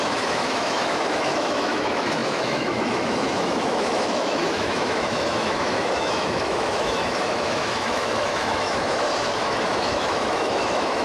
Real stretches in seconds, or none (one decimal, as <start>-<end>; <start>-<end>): none

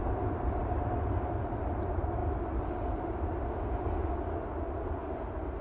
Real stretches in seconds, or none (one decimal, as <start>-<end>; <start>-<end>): 0.0-5.6